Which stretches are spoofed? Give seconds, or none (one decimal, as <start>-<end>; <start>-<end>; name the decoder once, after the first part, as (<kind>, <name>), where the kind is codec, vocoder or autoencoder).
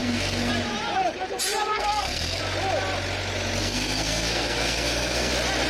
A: 0.0-0.5 (codec, SNAC); 1.7-2.4; 3.6-5.3